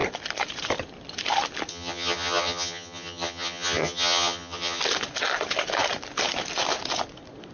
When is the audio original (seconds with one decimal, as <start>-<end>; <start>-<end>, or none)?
0.0-1.7; 4.8-7.5